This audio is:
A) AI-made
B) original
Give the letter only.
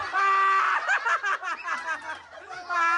B